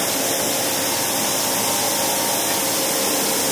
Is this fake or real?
real